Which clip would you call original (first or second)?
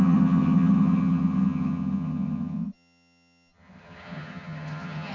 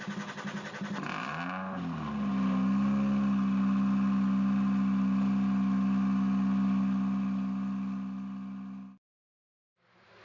second